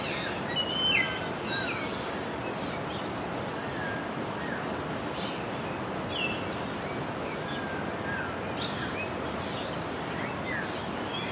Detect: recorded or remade recorded